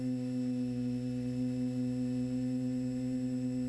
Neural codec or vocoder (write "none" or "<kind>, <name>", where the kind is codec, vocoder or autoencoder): none